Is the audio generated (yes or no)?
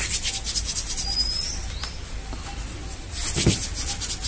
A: no